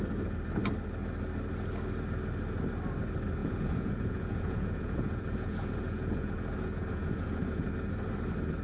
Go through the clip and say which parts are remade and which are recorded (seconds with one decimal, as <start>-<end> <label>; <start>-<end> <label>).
0.0-3.4 recorded; 3.4-7.7 remade; 7.7-8.6 recorded